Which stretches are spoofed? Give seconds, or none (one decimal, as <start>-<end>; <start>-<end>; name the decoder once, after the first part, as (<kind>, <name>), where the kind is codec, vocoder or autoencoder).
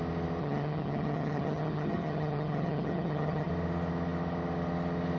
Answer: 0.4-3.5 (vocoder, HiFi-GAN)